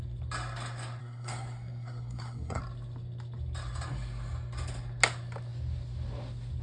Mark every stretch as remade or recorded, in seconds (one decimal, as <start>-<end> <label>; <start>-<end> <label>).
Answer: 0.0-1.0 recorded; 1.0-2.6 remade; 2.6-6.6 recorded